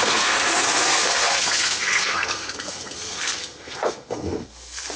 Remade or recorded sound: remade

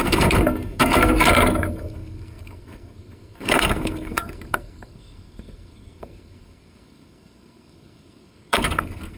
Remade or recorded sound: remade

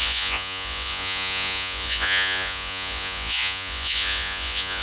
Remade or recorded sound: remade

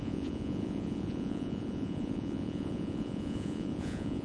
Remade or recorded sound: remade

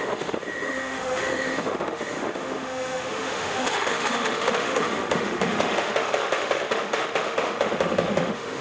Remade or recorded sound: remade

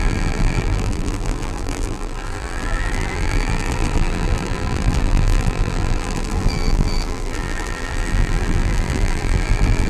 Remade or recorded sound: remade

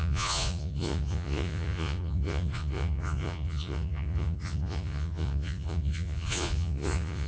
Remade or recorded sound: remade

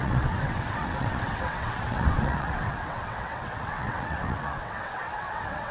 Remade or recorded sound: remade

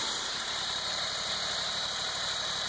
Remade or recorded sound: remade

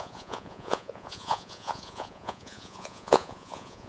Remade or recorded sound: remade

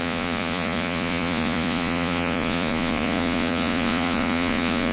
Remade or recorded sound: remade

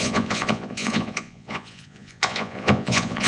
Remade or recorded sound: remade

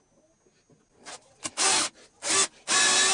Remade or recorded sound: recorded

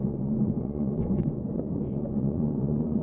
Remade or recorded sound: remade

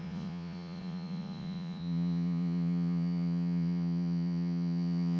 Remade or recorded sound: remade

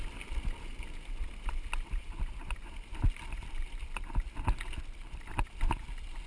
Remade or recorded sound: recorded